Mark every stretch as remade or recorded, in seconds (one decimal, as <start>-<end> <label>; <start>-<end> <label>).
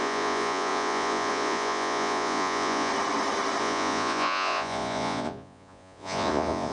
0.0-2.9 remade; 2.9-3.6 recorded; 3.6-6.7 remade